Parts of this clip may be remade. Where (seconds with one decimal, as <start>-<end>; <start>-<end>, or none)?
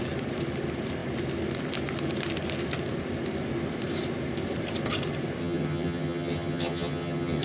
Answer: 5.4-7.4